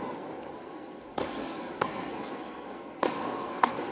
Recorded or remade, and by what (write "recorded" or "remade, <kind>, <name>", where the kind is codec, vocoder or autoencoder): remade, codec, SNAC